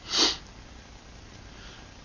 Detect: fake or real real